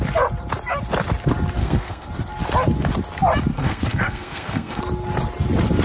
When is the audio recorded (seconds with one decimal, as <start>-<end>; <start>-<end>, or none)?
0.0-1.6; 2.1-3.5; 4.8-5.8

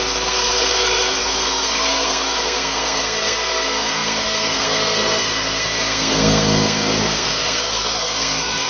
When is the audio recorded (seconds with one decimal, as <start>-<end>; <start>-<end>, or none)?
none

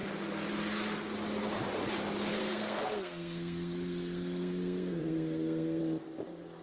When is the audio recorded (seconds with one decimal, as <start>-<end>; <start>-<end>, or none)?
0.0-2.4; 5.8-6.6